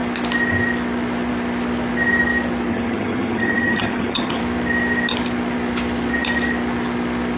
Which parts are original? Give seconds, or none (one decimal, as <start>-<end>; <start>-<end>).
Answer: 0.0-2.7; 4.4-7.4